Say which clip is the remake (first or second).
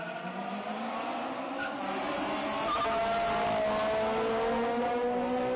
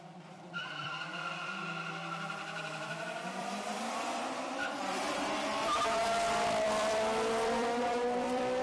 second